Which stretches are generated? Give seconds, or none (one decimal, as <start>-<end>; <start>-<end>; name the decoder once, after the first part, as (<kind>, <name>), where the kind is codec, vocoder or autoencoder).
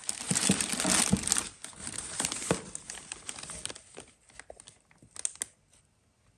0.0-0.7 (vocoder, BigVGAN v2); 1.8-2.5